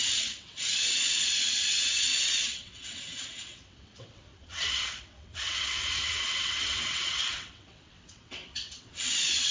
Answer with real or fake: fake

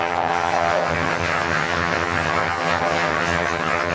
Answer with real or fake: fake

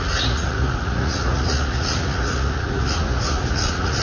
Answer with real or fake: fake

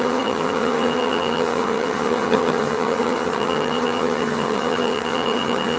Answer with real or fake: fake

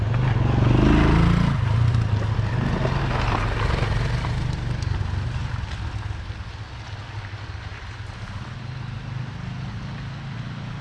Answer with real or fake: real